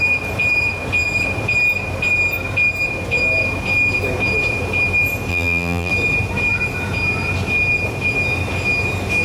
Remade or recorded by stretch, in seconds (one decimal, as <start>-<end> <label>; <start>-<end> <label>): 0.0-5.3 recorded; 5.3-5.9 remade; 5.9-9.2 recorded